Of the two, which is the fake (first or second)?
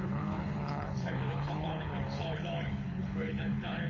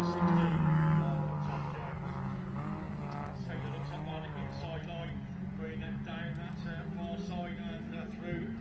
first